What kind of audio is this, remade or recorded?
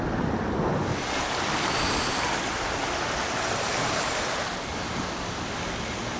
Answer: recorded